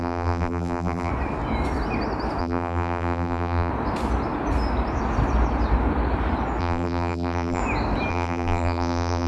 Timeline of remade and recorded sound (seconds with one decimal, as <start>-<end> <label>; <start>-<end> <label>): 0.0-1.1 remade; 1.1-2.4 recorded; 2.4-3.7 remade; 3.7-6.6 recorded; 6.6-7.6 remade; 7.6-8.1 recorded; 8.1-9.3 remade